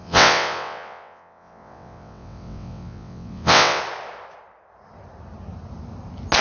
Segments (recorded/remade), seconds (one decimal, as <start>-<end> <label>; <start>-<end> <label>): 0.0-3.8 remade; 3.8-6.4 recorded